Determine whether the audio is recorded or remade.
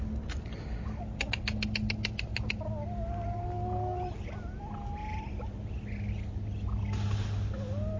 recorded